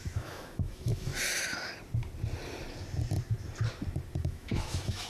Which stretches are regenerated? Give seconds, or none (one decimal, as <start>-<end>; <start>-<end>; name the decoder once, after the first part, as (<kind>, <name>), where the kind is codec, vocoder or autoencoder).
0.0-1.1 (autoencoder, DAC-VAE); 4.2-5.1